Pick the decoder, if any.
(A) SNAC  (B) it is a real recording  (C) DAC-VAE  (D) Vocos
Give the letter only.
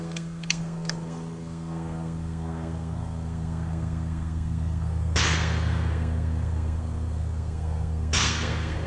A